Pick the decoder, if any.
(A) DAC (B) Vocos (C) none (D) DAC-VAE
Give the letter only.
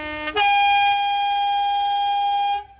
C